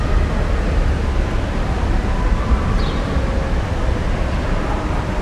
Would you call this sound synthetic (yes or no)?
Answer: no